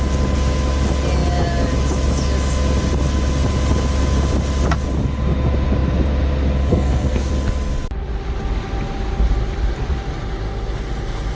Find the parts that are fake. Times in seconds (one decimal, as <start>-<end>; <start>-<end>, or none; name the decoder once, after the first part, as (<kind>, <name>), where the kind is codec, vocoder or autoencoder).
6.7-7.3 (codec, SNAC)

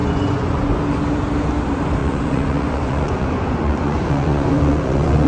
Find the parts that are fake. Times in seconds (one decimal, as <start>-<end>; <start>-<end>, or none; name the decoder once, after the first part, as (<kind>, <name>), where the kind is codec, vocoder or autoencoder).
0.0-0.8 (vocoder, Vocos); 2.0-5.3